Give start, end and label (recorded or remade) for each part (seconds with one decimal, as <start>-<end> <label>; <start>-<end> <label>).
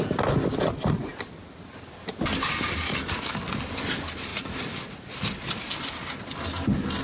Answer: 0.0-7.0 recorded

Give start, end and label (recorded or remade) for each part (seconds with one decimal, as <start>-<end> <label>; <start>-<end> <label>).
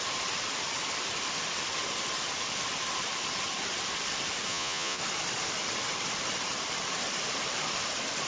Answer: 0.0-4.5 recorded; 4.5-5.0 remade; 5.0-8.3 recorded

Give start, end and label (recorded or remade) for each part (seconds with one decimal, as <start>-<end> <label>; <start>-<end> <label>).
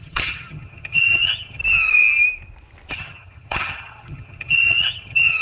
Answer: 0.0-1.6 remade; 1.6-2.9 recorded; 2.9-5.4 remade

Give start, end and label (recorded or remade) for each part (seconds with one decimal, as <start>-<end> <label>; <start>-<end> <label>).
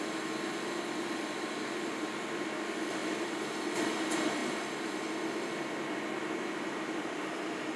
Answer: 0.0-7.8 recorded